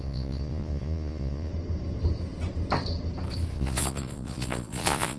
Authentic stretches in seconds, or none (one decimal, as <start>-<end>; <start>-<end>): 1.5-3.5